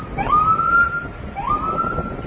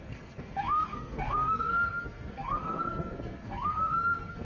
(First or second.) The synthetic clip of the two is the second